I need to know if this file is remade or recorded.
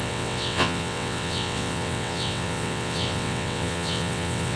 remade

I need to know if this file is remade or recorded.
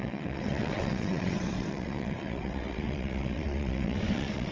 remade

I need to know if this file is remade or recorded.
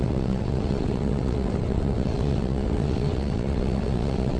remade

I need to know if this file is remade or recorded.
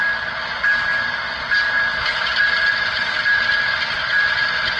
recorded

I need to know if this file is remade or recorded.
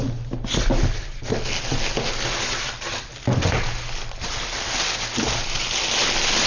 recorded